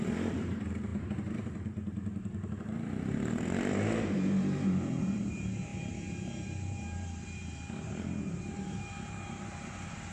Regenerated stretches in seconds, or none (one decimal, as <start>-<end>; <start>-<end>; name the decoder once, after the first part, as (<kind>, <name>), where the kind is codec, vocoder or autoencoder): 0.0-10.1 (vocoder, BigVGAN v2)